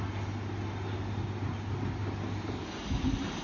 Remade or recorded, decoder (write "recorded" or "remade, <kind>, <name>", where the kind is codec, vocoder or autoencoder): recorded